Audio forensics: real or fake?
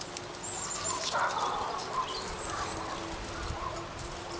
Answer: real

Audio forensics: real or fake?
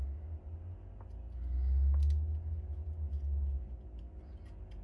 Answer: real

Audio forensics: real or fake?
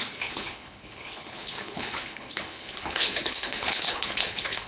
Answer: fake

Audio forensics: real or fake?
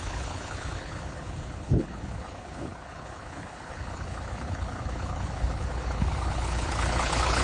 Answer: fake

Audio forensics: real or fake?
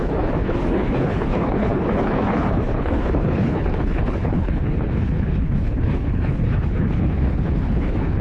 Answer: fake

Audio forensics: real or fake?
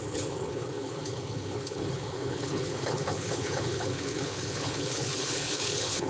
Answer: fake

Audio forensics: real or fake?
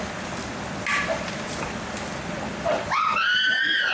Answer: real